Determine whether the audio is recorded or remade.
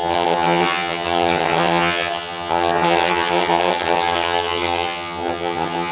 remade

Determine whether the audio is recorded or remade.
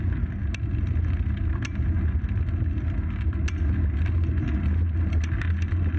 recorded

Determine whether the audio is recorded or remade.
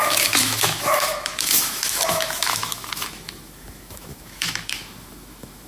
remade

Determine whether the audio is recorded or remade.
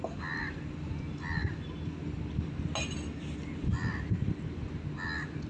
recorded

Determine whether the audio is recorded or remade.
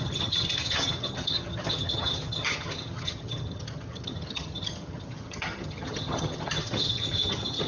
remade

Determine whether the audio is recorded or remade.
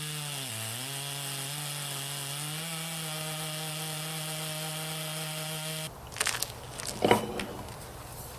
recorded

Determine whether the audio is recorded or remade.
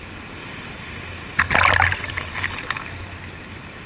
recorded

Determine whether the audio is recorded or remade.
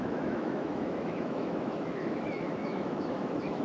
remade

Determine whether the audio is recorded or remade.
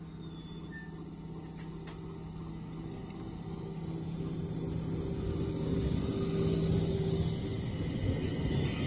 recorded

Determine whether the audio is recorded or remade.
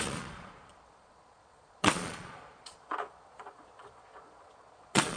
remade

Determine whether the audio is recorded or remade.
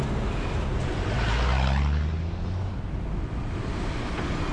recorded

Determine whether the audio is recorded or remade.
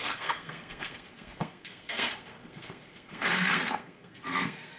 remade